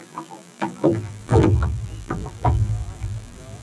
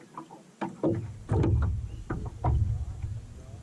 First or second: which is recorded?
second